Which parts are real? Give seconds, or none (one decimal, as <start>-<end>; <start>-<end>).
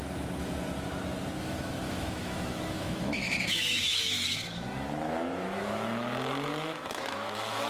0.0-1.4